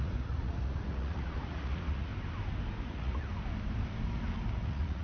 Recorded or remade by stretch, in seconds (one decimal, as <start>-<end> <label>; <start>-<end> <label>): 0.0-2.1 remade; 2.1-2.9 recorded; 2.9-3.3 remade; 3.3-4.5 recorded; 4.5-5.0 remade